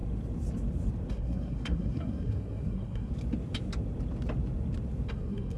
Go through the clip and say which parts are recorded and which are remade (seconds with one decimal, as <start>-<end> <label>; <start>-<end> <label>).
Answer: 0.0-1.1 recorded; 1.1-3.1 remade; 3.1-5.1 recorded; 5.1-5.6 remade